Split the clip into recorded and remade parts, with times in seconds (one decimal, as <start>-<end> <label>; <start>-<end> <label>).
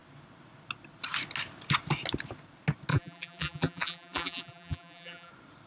0.0-2.9 recorded; 2.9-5.3 remade; 5.3-5.7 recorded